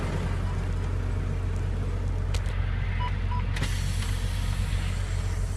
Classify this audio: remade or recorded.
recorded